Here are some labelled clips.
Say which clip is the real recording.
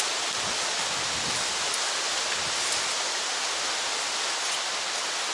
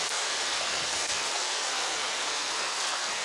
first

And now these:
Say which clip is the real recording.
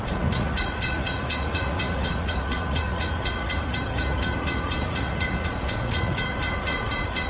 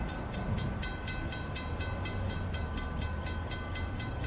second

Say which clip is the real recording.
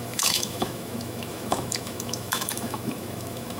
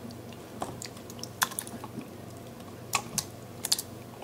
second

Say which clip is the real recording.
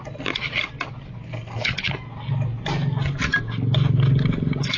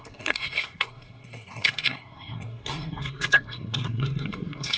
first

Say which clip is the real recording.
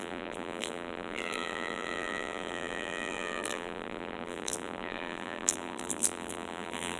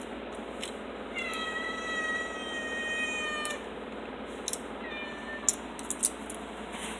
second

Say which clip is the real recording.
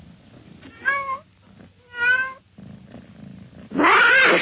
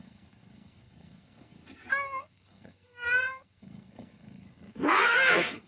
first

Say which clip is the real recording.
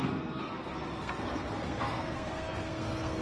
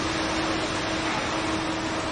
second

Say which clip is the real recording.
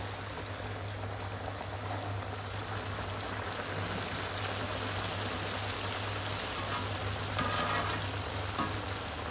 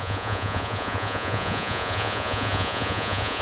first